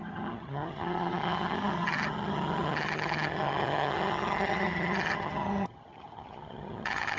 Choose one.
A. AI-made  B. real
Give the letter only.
A